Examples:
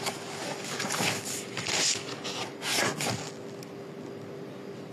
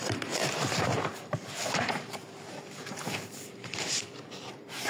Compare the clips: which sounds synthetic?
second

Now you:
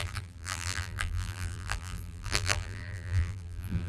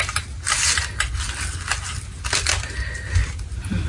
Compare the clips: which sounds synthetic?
first